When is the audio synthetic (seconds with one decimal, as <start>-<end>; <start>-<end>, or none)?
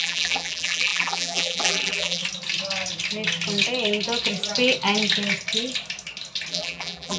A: 0.0-2.2; 6.5-7.2